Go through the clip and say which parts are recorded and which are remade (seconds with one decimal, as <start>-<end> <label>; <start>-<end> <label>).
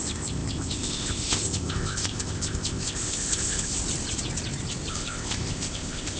0.0-3.8 remade; 3.8-4.9 recorded; 4.9-6.2 remade